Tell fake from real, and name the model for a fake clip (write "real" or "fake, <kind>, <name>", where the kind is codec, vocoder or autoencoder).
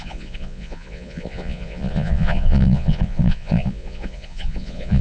fake, vocoder, Vocos